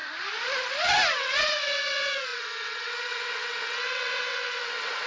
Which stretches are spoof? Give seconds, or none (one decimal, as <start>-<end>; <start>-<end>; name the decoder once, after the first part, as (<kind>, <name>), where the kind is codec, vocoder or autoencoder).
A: 1.1-5.1 (vocoder, WaveNeXt)